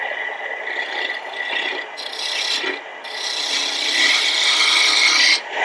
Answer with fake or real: real